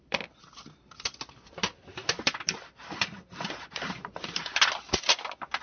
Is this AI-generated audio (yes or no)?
no